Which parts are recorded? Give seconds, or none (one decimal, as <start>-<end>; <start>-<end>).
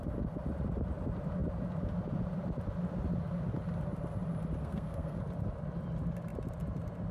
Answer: 0.0-4.6; 5.2-7.1